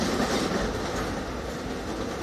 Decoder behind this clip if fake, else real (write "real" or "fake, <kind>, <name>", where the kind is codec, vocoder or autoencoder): real